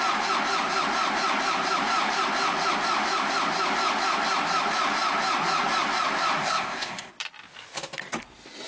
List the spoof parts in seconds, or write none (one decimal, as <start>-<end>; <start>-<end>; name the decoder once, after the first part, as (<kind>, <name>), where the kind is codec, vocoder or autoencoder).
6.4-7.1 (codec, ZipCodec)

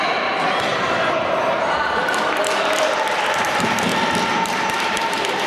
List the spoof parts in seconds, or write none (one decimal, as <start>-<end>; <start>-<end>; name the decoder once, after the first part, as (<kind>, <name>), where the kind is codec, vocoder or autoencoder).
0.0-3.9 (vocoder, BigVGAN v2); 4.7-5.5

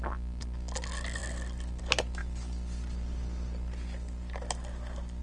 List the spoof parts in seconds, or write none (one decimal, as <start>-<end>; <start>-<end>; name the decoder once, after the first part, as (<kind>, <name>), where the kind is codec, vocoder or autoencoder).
1.2-1.8 (vocoder, BigVGAN v2); 2.2-5.2